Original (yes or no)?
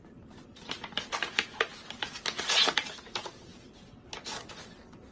yes